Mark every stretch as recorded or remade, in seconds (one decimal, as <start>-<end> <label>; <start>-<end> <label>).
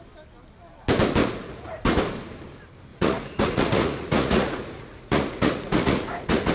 0.0-1.2 recorded; 1.2-2.0 remade; 2.0-2.9 recorded; 2.9-6.5 remade